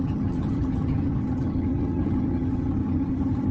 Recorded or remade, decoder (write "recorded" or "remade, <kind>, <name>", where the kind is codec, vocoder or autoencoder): remade, vocoder, HiFi-GAN